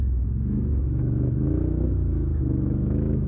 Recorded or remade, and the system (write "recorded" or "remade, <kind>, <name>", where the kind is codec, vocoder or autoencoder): remade, autoencoder, DAC-VAE